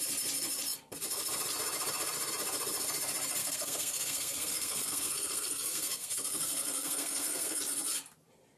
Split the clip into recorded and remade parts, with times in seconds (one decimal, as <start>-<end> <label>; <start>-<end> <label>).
0.0-3.4 recorded; 3.4-7.6 remade; 7.6-8.6 recorded